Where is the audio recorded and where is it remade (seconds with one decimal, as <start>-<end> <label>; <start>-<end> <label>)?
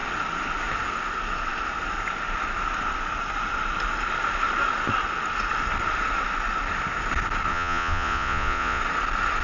0.0-7.5 recorded; 7.5-8.8 remade; 8.8-9.4 recorded